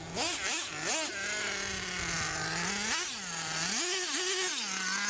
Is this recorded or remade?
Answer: recorded